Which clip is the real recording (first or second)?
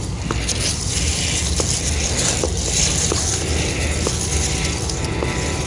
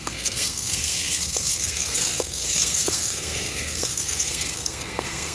first